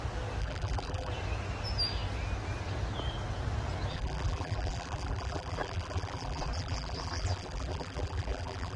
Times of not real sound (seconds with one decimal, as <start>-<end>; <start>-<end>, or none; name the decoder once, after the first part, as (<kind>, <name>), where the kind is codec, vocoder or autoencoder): 0.4-1.1 (vocoder, BigVGAN v2); 3.9-8.8